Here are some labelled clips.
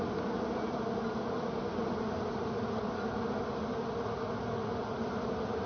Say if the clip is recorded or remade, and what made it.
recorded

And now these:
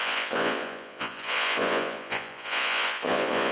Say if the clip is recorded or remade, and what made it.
remade, vocoder, Vocos